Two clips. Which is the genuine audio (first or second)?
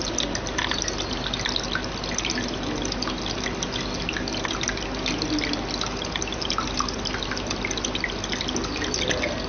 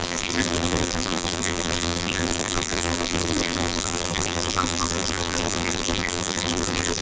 first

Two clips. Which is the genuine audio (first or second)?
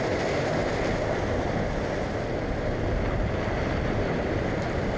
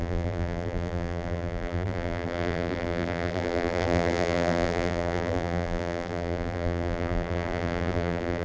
first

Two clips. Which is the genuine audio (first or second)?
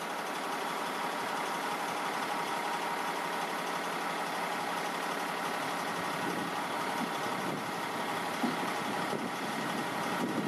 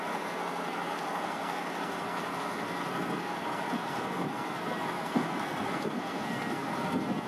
first